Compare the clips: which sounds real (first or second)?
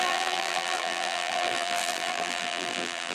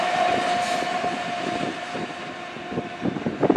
second